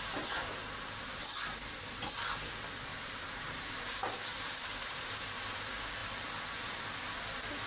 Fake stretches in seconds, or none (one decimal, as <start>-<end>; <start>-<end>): 2.9-3.6; 4.3-5.4